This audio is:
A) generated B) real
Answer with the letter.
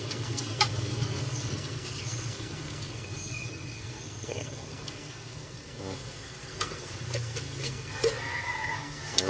A